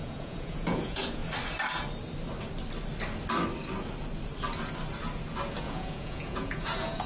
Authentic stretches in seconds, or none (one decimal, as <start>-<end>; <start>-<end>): 1.2-5.5